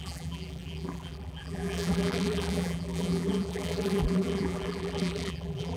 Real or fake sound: fake